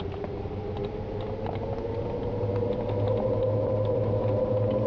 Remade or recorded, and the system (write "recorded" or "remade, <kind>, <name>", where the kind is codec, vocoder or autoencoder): recorded